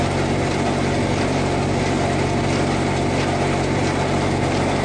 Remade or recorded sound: recorded